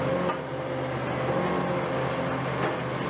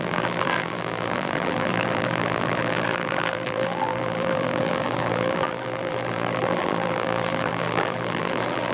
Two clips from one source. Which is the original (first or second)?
first